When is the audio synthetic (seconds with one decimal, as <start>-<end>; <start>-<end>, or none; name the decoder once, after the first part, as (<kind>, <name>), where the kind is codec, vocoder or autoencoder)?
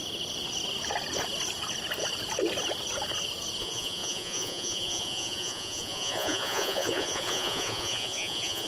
3.6-8.7 (vocoder, Vocos)